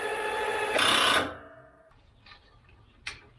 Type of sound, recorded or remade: recorded